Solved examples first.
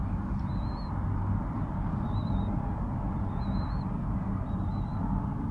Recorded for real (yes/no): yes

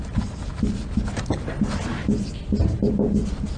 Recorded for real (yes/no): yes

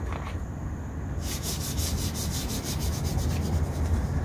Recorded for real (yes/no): yes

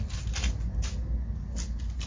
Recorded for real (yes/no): yes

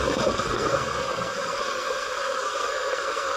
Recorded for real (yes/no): no